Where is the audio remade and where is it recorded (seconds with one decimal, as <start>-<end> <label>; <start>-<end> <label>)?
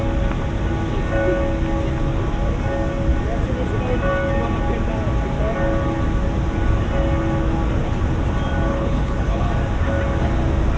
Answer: 0.0-8.7 recorded; 8.7-9.5 remade; 9.5-10.8 recorded